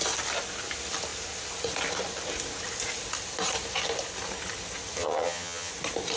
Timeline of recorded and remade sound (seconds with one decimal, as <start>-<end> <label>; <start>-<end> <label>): 0.0-5.0 recorded; 5.0-5.7 remade; 5.7-6.2 recorded